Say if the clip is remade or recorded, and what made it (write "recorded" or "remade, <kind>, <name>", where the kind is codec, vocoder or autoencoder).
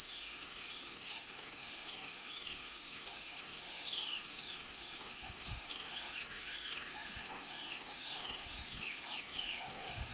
remade, autoencoder, DAC-VAE